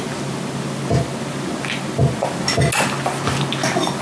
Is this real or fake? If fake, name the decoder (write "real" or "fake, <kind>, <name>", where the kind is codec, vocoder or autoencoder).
real